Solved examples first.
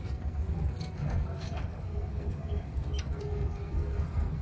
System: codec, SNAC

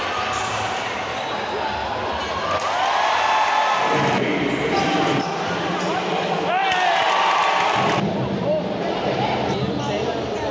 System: none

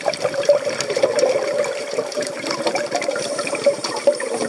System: vocoder, BigVGAN v2